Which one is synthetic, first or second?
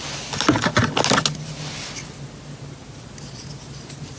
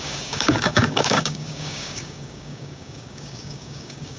second